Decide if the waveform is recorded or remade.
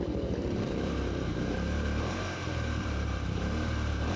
remade